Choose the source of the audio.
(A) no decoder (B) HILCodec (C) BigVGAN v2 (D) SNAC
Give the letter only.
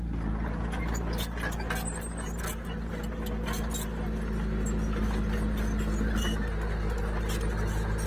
A